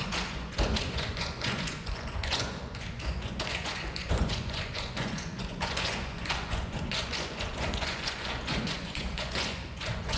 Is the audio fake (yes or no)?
yes